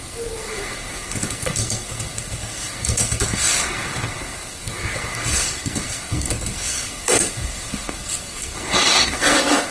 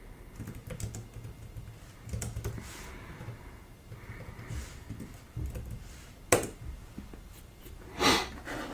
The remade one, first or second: first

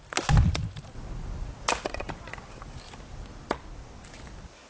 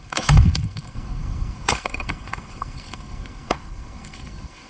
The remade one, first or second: second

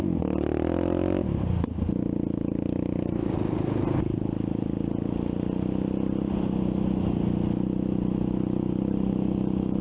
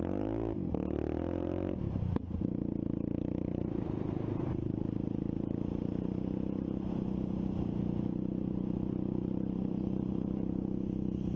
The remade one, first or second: second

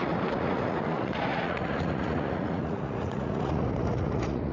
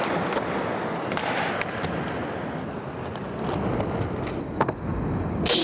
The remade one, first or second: first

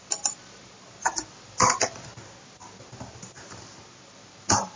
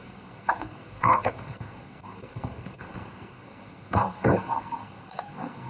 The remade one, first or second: second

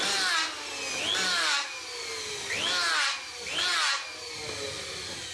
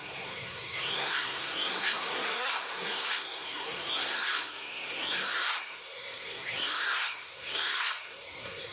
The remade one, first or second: second